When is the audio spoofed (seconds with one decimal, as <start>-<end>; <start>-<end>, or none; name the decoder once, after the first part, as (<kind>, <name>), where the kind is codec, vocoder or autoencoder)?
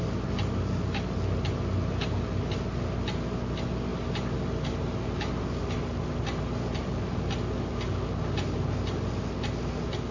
none